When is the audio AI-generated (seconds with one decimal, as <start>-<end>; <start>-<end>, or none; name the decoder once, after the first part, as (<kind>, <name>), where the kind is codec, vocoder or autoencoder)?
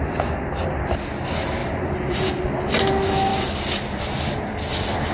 1.6-2.3 (vocoder, BigVGAN v2)